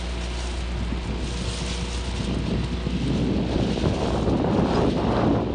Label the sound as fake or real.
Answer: real